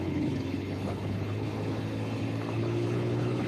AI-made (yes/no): yes